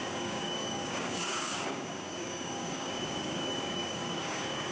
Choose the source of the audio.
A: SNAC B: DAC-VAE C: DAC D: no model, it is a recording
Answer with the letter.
C